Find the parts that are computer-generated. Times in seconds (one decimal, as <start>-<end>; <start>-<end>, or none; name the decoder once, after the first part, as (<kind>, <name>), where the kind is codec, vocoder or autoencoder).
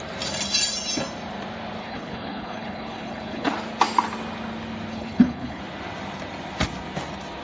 1.8-3.5 (codec, HILCodec); 4.9-5.6